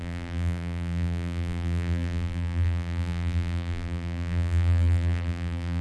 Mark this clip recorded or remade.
remade